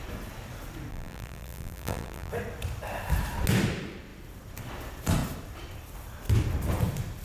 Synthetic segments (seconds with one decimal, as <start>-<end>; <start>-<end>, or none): 0.9-2.3